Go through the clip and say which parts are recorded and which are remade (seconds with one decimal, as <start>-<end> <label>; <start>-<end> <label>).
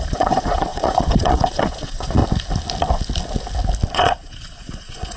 0.0-2.2 remade; 2.2-3.9 recorded; 3.9-5.2 remade